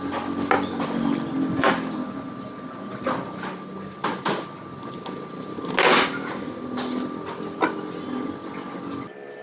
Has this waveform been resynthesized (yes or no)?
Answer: no